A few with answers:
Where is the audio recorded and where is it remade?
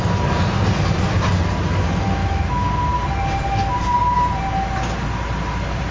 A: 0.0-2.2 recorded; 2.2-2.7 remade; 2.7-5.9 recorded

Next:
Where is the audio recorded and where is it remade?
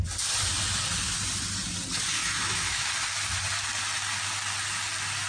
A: 0.0-2.2 recorded; 2.2-2.9 remade; 2.9-5.3 recorded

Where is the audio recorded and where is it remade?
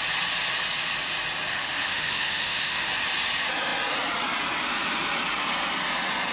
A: 0.0-1.5 recorded; 1.5-2.9 remade; 2.9-6.3 recorded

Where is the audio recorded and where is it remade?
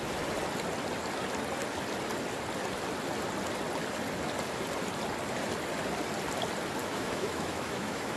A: 0.0-6.8 recorded; 6.8-8.2 remade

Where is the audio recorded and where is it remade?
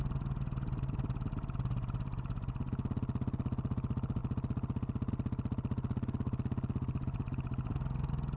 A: 0.0-8.4 recorded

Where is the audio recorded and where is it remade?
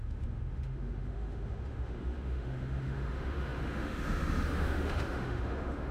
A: 0.0-5.9 remade